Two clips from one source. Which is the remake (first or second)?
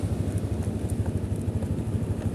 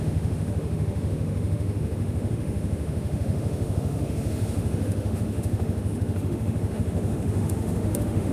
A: second